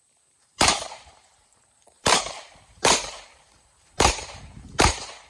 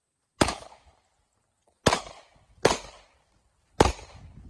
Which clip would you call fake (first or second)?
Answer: first